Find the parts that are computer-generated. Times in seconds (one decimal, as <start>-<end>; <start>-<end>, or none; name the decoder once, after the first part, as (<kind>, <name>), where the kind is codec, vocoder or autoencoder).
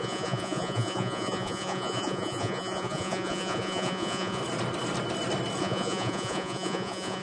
0.0-4.4 (vocoder, Vocos); 5.6-7.2